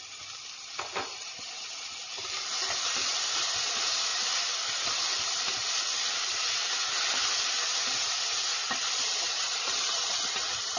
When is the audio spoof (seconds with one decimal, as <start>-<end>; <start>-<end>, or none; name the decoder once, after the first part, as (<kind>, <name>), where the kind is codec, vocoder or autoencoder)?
none

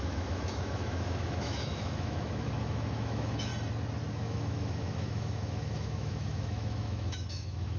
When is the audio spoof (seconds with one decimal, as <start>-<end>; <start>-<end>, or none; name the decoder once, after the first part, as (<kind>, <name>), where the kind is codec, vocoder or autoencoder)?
0.0-3.5 (autoencoder, DAC-VAE); 4.1-7.8

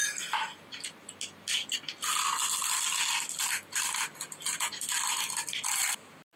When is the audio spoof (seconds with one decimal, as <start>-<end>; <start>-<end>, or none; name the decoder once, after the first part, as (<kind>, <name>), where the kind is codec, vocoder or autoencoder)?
none

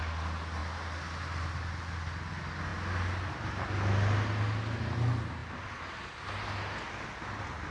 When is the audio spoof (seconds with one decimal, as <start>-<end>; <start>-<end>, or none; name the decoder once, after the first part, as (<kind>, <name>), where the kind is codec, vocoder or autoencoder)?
none

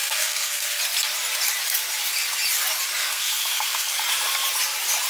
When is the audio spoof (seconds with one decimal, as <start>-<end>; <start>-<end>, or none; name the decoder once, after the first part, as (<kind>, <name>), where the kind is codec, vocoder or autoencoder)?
0.0-0.8 (codec, SNAC); 3.0-4.0